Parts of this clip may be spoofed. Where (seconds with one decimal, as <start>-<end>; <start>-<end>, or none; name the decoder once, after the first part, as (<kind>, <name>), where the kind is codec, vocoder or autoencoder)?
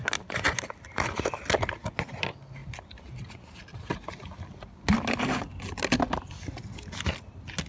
none